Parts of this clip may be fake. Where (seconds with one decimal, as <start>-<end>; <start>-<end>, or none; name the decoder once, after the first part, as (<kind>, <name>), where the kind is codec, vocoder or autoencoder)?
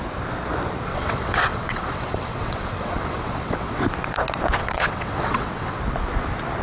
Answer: 0.9-3.8 (vocoder, WaveNeXt); 4.6-5.8